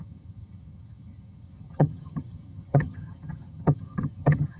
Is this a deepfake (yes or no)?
yes